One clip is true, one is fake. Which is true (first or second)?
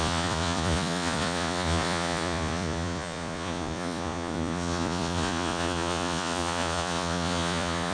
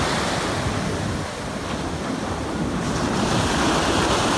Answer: second